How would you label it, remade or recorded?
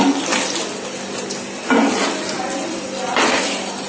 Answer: recorded